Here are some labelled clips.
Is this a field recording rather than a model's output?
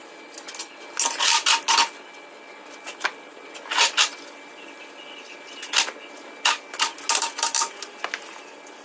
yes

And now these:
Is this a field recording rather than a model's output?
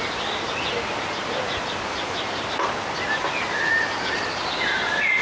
yes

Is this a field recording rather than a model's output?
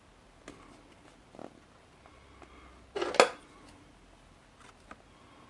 yes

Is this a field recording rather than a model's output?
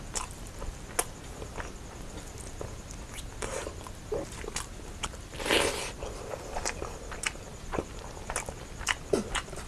yes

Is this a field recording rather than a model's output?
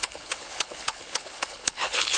no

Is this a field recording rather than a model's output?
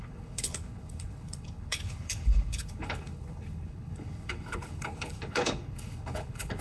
no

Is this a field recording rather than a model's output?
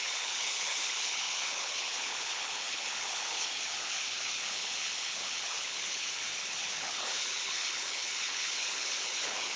no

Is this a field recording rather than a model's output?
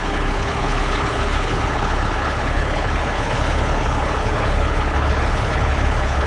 no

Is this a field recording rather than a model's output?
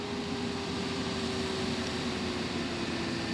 yes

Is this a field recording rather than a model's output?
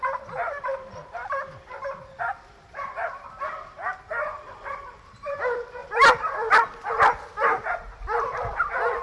yes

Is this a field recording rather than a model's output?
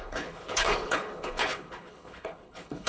no